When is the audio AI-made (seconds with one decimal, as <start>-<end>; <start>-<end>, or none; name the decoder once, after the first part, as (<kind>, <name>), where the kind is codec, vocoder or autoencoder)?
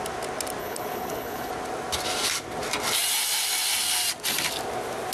0.6-1.5 (codec, HILCodec)